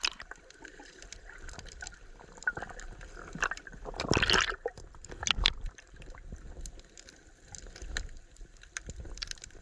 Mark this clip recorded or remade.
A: remade